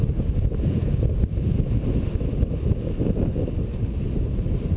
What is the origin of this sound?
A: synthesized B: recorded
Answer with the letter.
B